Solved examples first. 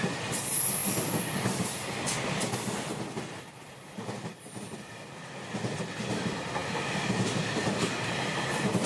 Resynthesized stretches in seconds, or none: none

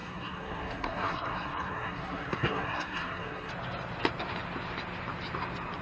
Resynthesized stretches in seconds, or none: 0.0-3.5 (codec, SNAC)

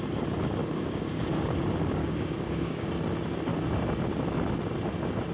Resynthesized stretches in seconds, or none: 0.6-1.3 (codec, DAC); 2.0-2.9

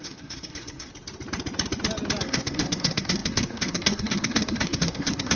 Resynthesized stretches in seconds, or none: 0.0-0.9 (codec, SNAC); 2.2-5.3

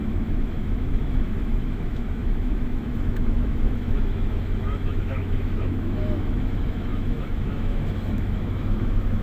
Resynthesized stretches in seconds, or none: 0.0-9.2 (autoencoder, DAC-VAE)

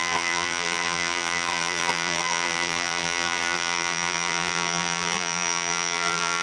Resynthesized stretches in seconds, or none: 0.0-6.4 (vocoder, BigVGAN v2)

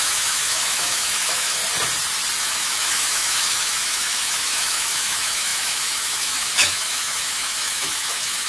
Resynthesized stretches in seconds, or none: 0.0-1.6 (autoencoder, DAC-VAE); 2.4-8.5

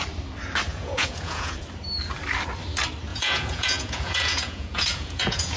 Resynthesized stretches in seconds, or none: 0.7-1.6 (vocoder, Vocos); 3.1-5.6